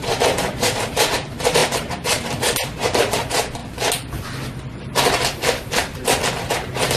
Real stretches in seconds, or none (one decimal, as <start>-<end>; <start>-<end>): 3.6-6.5

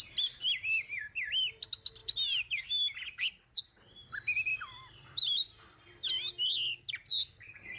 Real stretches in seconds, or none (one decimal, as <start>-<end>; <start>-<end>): 0.0-2.0; 2.6-4.5; 6.1-7.8

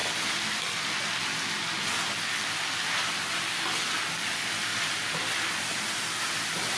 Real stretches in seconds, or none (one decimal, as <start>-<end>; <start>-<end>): 0.0-6.8

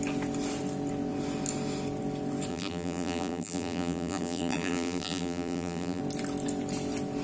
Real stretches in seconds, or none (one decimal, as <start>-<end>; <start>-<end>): 0.0-2.5; 6.0-7.2

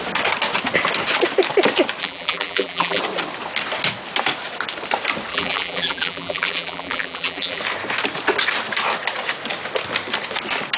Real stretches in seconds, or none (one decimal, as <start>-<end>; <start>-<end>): 0.0-2.0; 3.0-5.3; 7.6-10.8

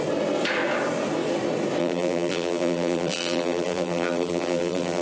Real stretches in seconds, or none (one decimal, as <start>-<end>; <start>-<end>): 0.0-1.8

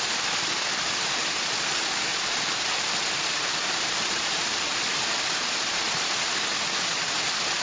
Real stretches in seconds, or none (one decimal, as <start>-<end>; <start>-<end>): 0.0-2.1; 6.1-7.6